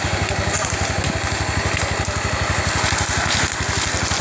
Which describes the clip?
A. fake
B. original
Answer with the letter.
B